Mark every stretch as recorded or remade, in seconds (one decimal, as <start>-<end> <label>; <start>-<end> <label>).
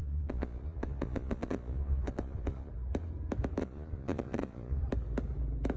0.0-2.7 remade; 2.7-3.6 recorded; 3.6-4.8 remade; 4.8-5.8 recorded